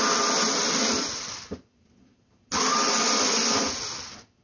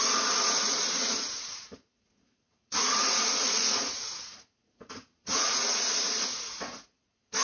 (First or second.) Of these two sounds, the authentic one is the first